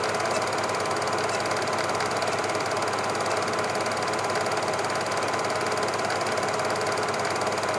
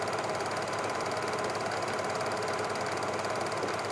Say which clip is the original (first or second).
first